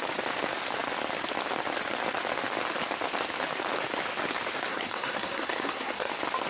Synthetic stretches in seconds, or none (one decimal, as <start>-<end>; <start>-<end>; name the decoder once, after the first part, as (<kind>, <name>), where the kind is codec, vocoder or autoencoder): 4.7-6.1 (codec, SNAC)